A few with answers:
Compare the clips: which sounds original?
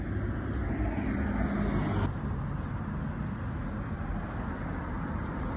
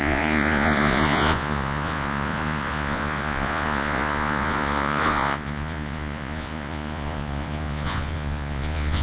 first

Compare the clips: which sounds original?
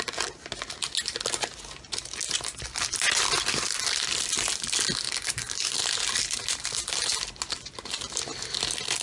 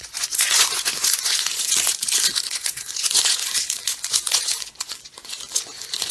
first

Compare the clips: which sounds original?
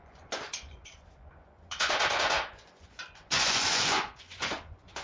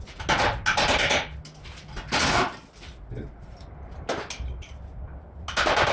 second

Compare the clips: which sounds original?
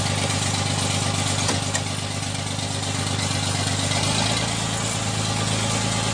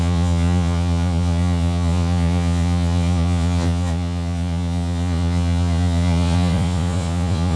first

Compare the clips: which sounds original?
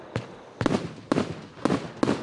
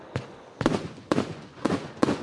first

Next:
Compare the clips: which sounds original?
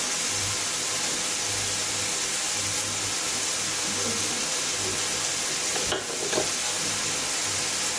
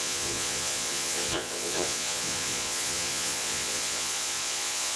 first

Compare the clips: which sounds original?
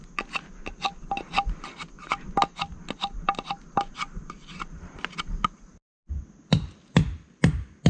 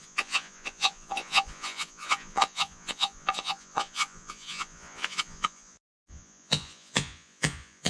first